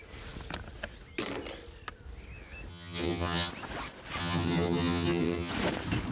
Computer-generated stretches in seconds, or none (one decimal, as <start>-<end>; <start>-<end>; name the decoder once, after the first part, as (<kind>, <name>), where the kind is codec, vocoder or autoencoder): 2.7-3.5 (vocoder, HiFi-GAN); 4.2-5.5